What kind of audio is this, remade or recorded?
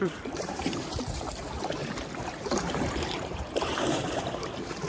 remade